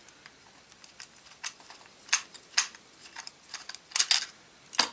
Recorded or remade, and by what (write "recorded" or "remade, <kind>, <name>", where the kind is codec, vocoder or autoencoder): recorded